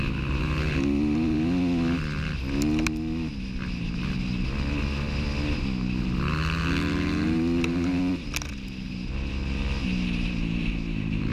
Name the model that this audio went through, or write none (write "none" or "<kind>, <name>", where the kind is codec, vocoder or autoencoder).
none